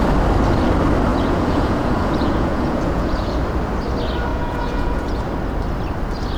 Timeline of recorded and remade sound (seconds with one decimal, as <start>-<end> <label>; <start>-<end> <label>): 0.0-1.1 recorded; 1.1-3.4 remade; 3.4-4.3 recorded; 4.3-5.2 remade; 5.2-6.4 recorded